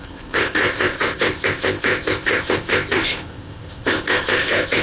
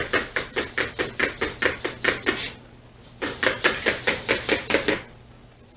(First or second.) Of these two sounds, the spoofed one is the first